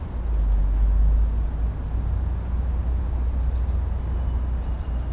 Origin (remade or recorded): recorded